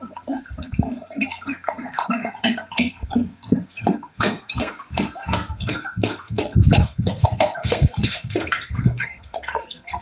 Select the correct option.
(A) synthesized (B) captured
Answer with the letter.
A